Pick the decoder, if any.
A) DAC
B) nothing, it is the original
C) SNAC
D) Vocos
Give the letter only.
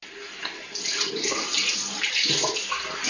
B